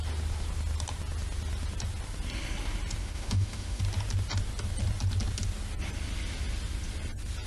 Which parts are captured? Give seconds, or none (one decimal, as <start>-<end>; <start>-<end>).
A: 0.0-3.0; 3.8-7.5